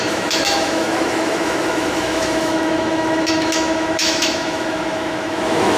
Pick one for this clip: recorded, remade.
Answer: remade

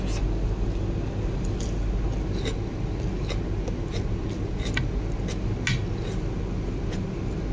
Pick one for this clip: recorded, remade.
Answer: recorded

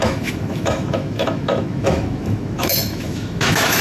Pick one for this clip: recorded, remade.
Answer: remade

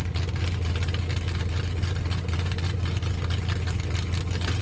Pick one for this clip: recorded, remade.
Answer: recorded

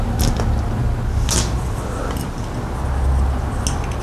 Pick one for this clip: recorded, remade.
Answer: recorded